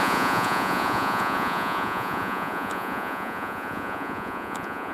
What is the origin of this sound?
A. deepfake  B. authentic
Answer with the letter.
A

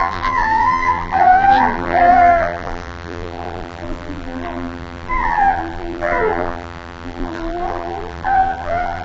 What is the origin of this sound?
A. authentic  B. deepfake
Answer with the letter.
B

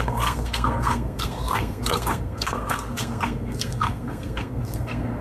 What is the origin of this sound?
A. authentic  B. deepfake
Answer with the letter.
B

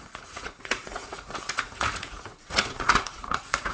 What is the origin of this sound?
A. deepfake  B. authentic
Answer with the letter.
A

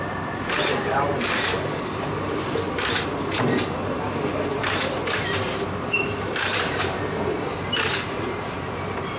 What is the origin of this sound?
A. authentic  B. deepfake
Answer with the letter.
B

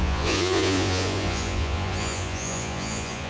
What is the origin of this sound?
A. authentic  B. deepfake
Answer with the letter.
B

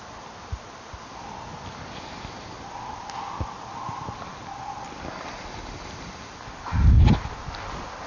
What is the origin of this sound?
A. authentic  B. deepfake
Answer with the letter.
A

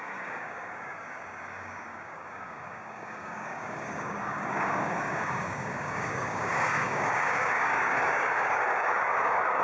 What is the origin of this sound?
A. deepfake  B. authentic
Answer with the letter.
A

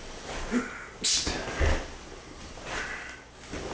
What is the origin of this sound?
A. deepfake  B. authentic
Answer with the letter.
B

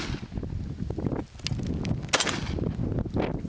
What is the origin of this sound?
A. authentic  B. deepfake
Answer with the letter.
A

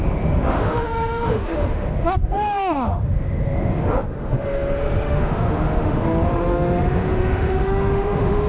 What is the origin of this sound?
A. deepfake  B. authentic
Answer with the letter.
A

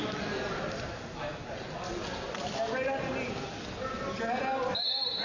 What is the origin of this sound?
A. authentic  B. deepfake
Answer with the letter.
A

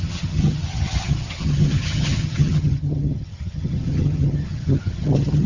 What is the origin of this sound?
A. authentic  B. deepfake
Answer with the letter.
B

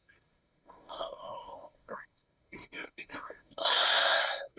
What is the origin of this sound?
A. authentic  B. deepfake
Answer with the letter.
B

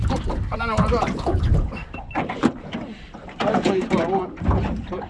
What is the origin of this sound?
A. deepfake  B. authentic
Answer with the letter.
A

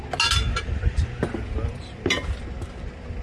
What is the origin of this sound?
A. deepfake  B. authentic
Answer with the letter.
B